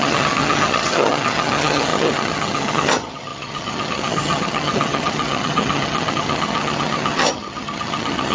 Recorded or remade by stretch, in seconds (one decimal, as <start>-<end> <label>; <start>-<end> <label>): 0.0-8.3 remade

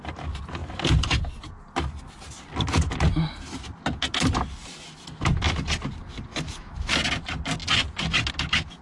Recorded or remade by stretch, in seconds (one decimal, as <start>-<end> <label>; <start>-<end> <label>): 0.0-6.3 recorded; 6.3-6.9 remade; 6.9-8.8 recorded

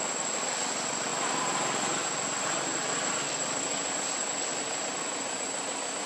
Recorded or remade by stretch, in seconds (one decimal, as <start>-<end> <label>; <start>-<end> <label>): 0.0-4.5 recorded; 4.5-5.0 remade; 5.0-6.1 recorded

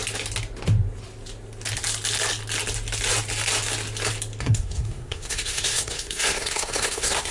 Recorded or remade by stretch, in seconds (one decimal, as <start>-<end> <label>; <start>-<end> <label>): 0.0-4.4 recorded; 4.4-7.3 remade

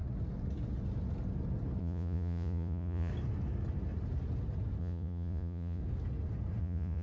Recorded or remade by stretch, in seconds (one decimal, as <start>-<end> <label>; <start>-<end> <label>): 0.0-1.8 recorded; 1.8-3.1 remade; 3.1-4.8 recorded; 4.8-5.8 remade; 5.8-6.6 recorded; 6.6-7.0 remade

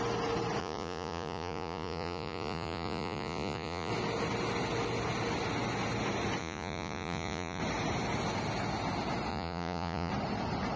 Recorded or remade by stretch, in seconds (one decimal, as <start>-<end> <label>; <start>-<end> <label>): 0.0-0.6 recorded; 0.6-3.9 remade; 3.9-6.4 recorded; 6.4-7.6 remade; 7.6-9.3 recorded; 9.3-10.1 remade; 10.1-10.8 recorded

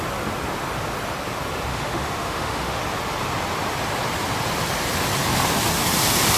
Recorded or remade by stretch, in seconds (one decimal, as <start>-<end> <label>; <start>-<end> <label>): 0.0-1.7 recorded; 1.7-2.8 remade; 2.8-6.4 recorded

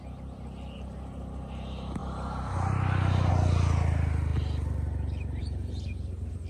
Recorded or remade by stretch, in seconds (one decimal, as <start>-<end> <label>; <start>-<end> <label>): 0.0-6.5 recorded